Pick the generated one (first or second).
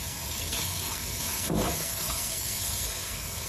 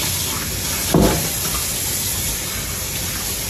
first